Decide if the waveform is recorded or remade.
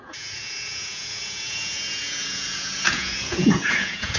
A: remade